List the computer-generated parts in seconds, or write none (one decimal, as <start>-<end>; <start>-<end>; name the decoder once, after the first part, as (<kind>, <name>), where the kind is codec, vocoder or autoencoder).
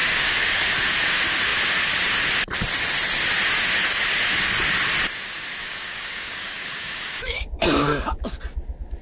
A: 0.0-0.7 (codec, DAC); 5.6-8.2